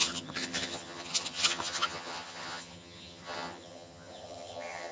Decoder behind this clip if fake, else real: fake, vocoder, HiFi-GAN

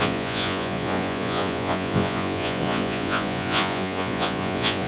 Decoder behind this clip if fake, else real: fake, vocoder, Vocos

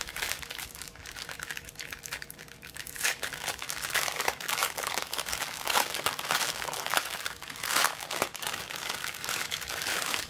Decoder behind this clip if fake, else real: fake, codec, DAC